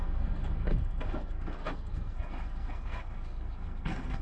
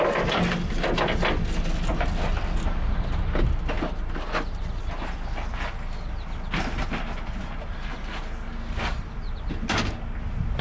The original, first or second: second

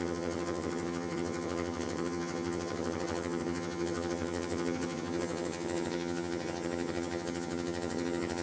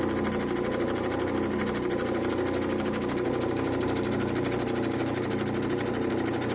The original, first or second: second